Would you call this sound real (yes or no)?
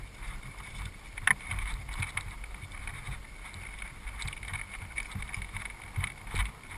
yes